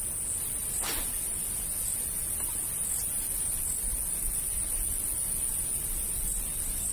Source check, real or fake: real